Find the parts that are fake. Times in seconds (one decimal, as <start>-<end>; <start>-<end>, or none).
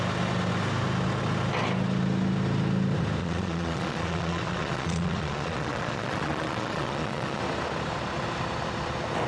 3.2-7.4